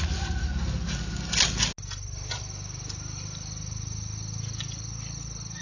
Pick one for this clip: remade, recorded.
recorded